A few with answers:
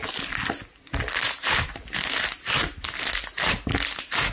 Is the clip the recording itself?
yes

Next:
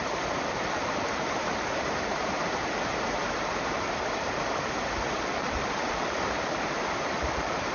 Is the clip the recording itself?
no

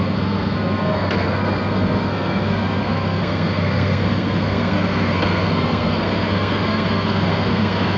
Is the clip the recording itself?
no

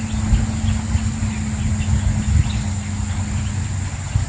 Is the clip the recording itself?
yes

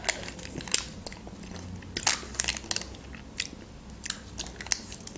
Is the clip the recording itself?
yes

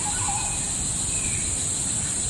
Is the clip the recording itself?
yes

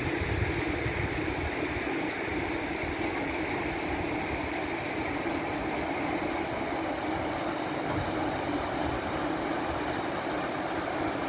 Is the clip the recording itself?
yes